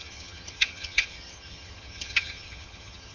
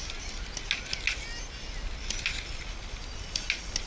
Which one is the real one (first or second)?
second